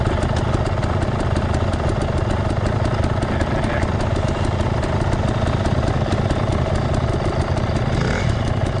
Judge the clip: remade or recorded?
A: recorded